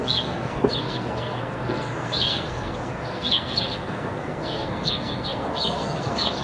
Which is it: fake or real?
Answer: fake